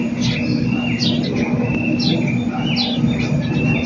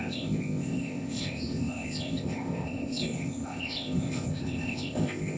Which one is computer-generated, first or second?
second